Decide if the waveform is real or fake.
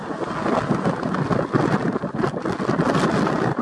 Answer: real